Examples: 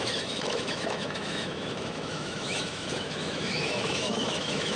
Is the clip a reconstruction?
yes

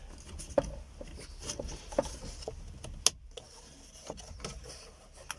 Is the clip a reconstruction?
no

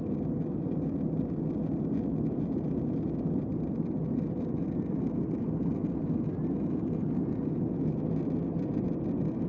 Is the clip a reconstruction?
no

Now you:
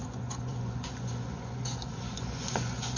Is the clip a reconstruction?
yes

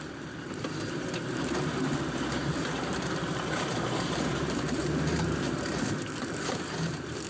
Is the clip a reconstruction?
yes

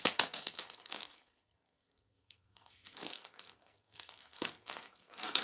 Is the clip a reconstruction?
yes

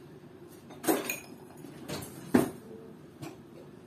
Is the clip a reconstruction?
yes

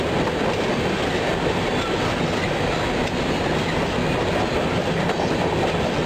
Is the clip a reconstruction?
no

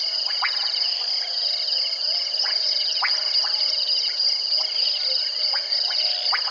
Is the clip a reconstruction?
no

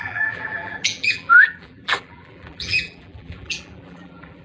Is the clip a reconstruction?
yes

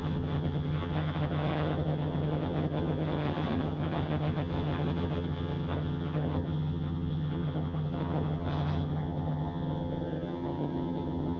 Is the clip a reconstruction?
yes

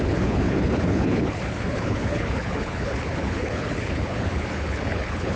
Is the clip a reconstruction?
yes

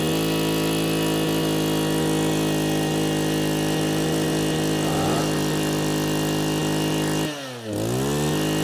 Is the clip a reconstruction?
no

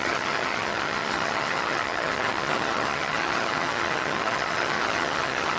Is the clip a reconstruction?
yes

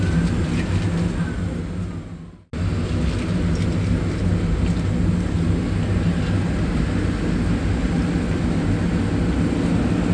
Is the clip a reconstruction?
no